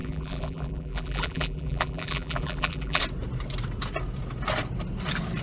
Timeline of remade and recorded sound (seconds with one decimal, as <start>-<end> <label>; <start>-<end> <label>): 0.0-3.0 remade; 3.0-5.4 recorded